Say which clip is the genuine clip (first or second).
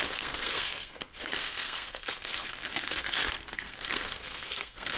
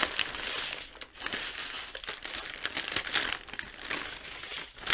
second